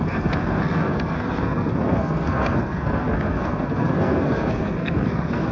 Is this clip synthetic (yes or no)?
yes